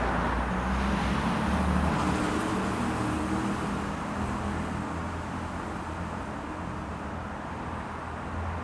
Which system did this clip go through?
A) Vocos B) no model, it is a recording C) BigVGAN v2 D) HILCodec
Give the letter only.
B